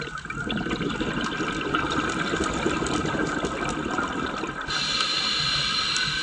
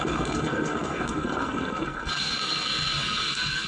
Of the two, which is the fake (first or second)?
second